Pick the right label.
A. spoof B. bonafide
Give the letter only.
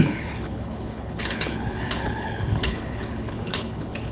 A